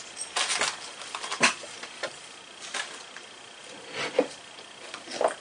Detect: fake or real real